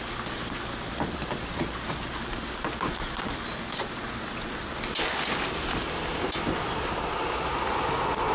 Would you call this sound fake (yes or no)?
no